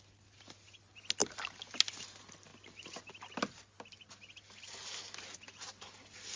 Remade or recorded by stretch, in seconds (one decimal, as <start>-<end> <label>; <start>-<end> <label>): 0.0-6.4 recorded

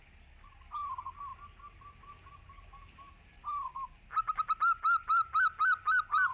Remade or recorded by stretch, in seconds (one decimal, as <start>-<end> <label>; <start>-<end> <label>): 0.0-6.3 recorded